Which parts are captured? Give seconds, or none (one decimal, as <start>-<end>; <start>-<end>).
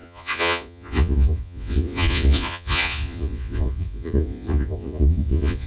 none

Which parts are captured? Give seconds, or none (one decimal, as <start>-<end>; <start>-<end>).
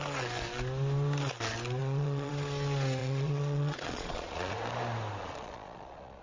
0.0-1.8; 2.3-3.0; 4.5-5.2